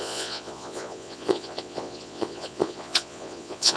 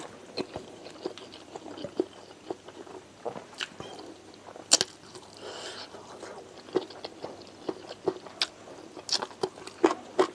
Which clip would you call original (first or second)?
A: second